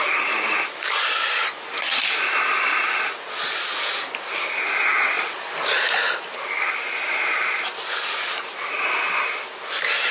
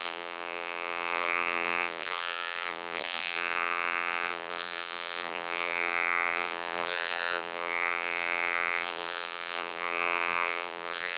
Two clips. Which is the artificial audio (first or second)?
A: second